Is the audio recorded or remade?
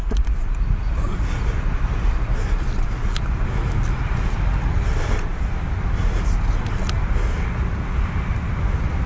recorded